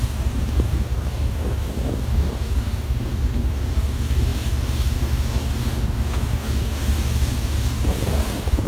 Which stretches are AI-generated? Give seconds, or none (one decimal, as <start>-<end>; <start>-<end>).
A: 0.0-8.7